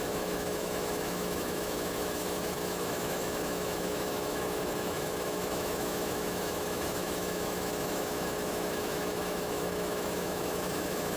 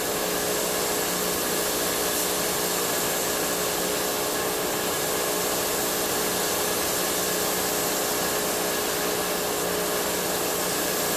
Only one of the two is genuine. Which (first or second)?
second